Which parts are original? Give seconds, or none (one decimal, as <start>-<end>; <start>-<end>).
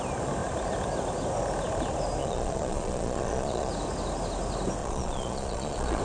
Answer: 0.0-2.2; 3.7-4.8